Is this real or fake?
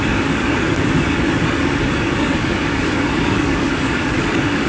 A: fake